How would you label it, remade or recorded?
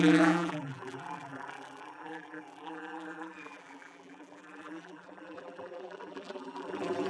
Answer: remade